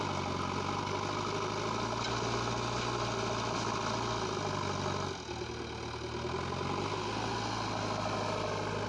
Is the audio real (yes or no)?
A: yes